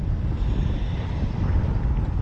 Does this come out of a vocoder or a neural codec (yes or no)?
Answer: no